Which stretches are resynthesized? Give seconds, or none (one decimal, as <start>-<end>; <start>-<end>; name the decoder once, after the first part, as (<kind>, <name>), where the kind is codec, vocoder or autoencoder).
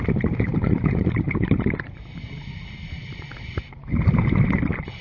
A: 0.5-3.5 (vocoder, BigVGAN v2)